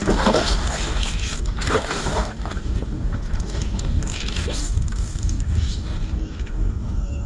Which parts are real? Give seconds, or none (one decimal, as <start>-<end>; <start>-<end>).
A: none